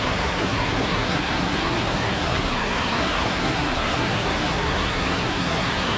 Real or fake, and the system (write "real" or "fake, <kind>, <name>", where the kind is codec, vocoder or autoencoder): fake, codec, SNAC